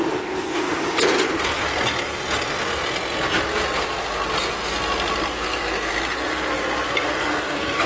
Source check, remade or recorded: recorded